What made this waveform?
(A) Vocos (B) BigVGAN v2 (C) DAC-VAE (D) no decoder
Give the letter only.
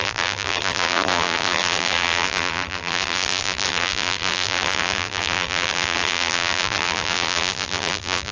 B